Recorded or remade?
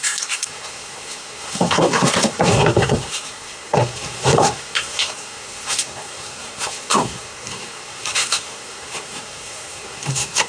remade